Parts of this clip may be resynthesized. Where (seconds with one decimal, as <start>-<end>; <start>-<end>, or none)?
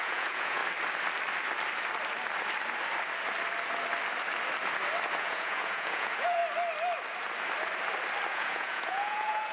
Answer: 0.0-0.6; 5.2-6.4; 8.3-9.5